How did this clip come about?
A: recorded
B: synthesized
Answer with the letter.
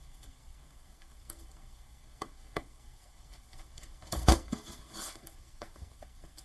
B